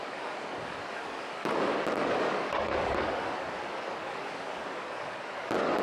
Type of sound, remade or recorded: remade